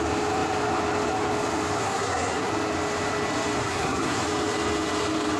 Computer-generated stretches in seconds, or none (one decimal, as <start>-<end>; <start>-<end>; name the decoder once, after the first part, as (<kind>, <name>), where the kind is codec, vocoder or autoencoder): 1.8-2.5 (codec, SNAC); 3.6-4.2